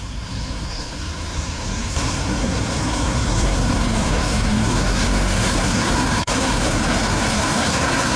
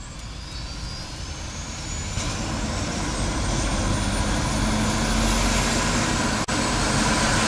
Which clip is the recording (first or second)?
second